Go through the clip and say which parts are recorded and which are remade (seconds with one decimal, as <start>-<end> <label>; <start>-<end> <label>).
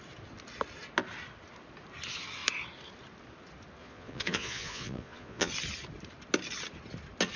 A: 0.0-3.8 recorded; 3.8-5.5 remade; 5.5-7.4 recorded